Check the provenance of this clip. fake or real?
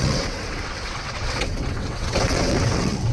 fake